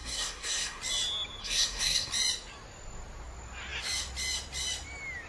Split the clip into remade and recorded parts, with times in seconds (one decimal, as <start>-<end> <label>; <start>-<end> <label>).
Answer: 0.0-0.8 remade; 0.8-1.4 recorded; 1.4-2.1 remade; 2.1-5.3 recorded